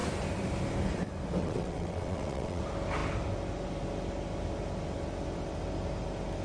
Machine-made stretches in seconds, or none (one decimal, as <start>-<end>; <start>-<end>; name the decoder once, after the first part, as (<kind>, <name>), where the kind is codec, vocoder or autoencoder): 1.4-2.6 (vocoder, WaveNeXt)